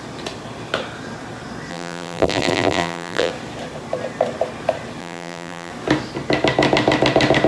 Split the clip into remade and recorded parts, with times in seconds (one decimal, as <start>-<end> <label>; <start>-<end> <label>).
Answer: 0.0-1.7 recorded; 1.7-3.3 remade; 3.3-5.0 recorded; 5.0-5.7 remade; 5.7-7.5 recorded